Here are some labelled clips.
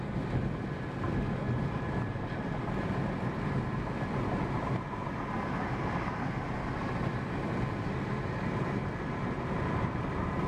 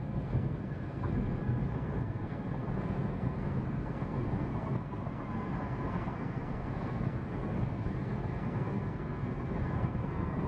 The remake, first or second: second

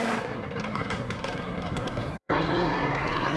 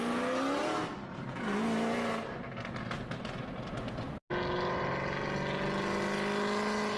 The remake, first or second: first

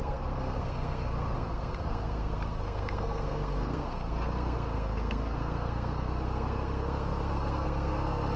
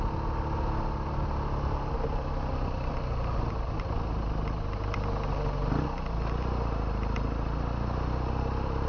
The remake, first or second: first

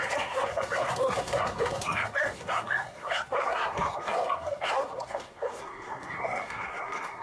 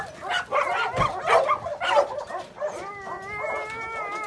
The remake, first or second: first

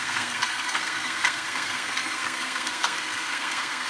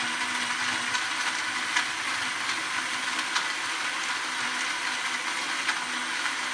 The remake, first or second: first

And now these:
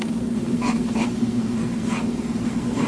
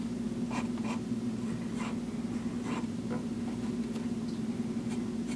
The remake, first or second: first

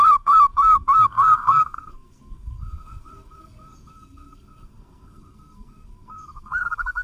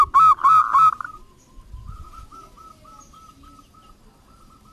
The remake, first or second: first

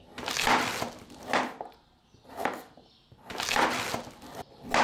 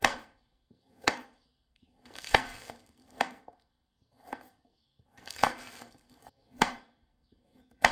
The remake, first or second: second